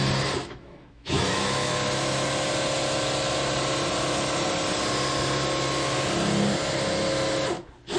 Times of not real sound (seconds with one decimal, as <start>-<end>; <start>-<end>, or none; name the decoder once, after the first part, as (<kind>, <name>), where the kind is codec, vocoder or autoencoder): 0.4-1.7 (autoencoder, DAC-VAE)